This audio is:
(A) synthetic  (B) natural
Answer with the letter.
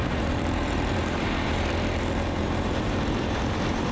A